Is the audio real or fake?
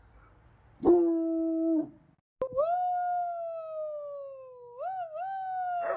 real